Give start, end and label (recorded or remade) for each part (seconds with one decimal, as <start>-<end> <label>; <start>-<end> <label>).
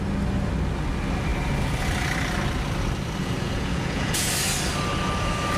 0.0-3.2 recorded; 3.2-4.3 remade; 4.3-5.6 recorded